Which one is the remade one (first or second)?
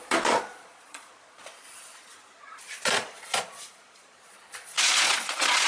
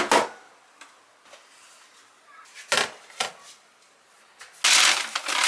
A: first